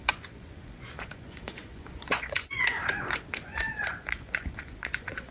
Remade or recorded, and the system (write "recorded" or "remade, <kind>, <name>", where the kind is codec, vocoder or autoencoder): remade, vocoder, Vocos